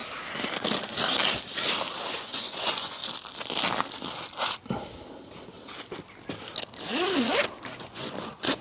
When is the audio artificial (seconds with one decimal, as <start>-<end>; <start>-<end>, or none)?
2.1-3.0; 7.8-8.6

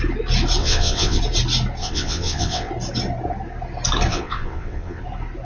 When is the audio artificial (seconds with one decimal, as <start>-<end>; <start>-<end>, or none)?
0.6-1.2; 1.8-2.7; 4.1-5.0